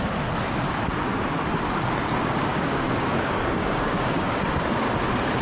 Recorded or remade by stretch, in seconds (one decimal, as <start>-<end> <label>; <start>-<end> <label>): 0.0-2.5 recorded; 2.5-4.9 remade; 4.9-5.4 recorded